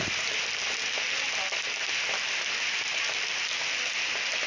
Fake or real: real